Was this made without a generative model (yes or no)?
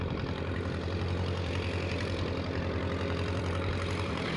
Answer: no